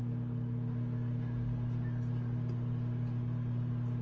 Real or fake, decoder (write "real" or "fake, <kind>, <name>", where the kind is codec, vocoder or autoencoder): real